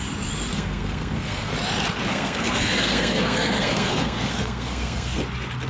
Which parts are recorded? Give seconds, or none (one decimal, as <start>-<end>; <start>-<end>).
0.0-0.5; 1.5-2.1; 5.2-5.7